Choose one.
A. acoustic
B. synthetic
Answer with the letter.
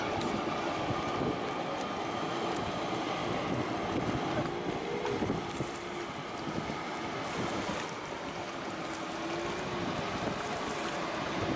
A